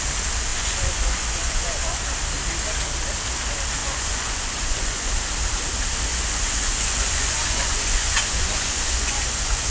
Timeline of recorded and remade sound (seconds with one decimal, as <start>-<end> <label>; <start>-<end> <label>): 0.0-0.5 recorded; 0.5-2.0 remade; 2.0-3.8 recorded; 3.8-5.1 remade; 5.1-6.1 recorded; 6.1-9.7 remade

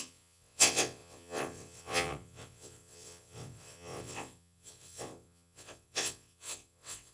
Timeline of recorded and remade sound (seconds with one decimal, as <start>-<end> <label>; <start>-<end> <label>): 0.0-7.1 remade

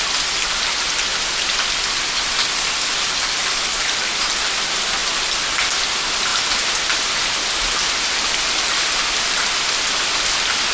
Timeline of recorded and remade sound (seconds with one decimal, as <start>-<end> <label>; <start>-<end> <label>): 0.0-5.0 recorded; 5.0-5.7 remade; 5.7-6.3 recorded; 6.3-7.3 remade; 7.3-10.7 recorded

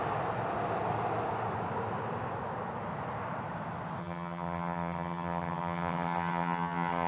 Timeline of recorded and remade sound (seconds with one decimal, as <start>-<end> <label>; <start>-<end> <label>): 0.0-4.0 recorded; 4.0-7.1 remade

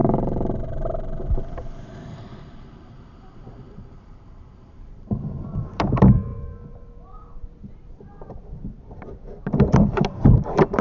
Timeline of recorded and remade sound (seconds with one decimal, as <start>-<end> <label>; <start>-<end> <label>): 0.0-10.8 remade

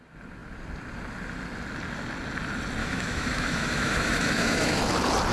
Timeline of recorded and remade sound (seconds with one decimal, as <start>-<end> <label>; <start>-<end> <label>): 0.0-2.8 recorded; 2.8-4.8 remade; 4.8-5.3 recorded